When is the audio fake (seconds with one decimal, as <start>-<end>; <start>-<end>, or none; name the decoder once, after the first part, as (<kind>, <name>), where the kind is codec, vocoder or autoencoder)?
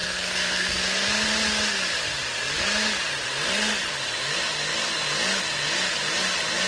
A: 0.0-0.8 (codec, SNAC)